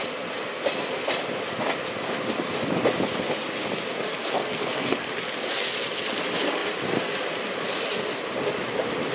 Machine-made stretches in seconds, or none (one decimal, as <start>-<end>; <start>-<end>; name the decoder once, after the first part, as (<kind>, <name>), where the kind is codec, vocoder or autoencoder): 4.1-5.1 (codec, SNAC)